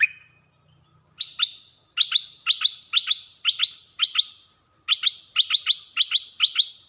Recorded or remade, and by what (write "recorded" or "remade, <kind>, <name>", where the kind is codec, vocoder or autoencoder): recorded